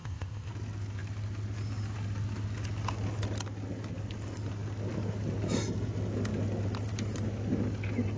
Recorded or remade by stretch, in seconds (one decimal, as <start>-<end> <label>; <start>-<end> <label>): 0.0-0.5 remade; 0.5-8.2 recorded